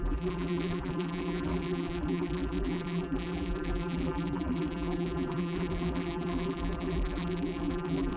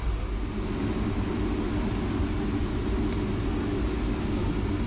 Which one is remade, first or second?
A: first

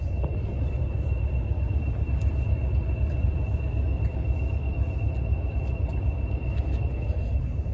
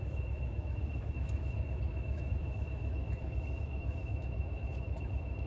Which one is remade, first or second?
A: second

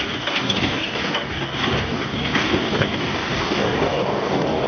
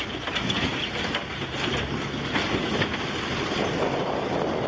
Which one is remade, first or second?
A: first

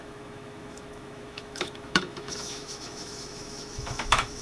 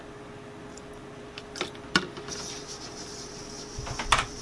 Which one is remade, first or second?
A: first